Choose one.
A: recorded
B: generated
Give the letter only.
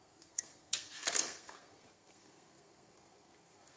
B